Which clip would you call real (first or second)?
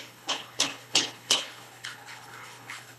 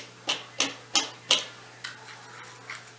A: second